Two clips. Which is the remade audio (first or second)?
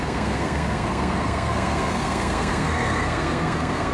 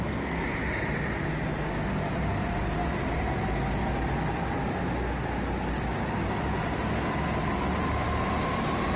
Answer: first